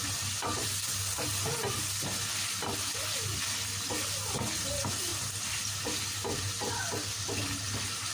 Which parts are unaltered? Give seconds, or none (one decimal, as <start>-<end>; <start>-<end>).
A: 0.0-8.1